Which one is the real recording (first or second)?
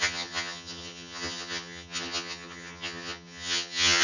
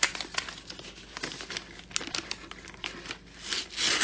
second